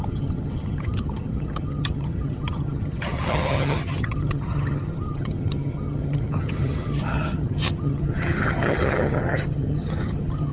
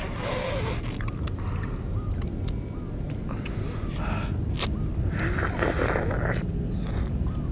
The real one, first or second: second